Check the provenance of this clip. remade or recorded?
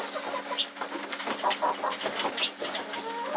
recorded